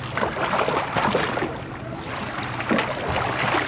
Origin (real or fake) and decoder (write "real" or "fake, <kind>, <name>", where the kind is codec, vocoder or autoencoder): real